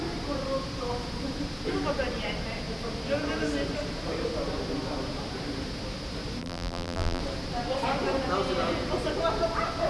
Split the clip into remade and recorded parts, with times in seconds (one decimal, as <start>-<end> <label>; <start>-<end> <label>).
0.0-6.4 recorded; 6.4-7.2 remade; 7.2-9.9 recorded